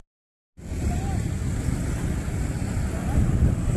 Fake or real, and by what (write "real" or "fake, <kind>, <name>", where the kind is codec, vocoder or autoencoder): real